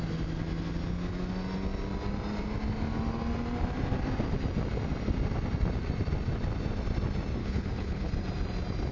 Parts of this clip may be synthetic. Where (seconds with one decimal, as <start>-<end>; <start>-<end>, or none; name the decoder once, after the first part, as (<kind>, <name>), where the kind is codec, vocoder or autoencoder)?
7.4-8.1 (codec, HILCodec)